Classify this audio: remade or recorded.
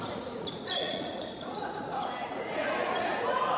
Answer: remade